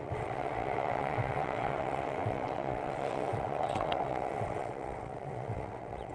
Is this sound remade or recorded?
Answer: remade